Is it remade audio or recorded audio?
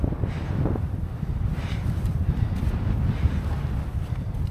recorded